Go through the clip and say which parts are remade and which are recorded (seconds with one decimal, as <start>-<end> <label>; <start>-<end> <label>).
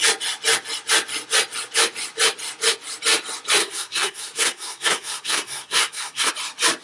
0.0-3.6 recorded; 3.6-6.3 remade; 6.3-6.8 recorded